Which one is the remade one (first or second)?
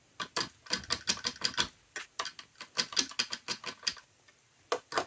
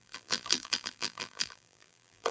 second